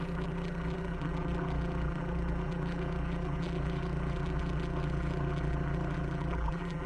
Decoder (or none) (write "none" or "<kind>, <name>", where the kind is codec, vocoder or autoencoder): vocoder, BigVGAN v2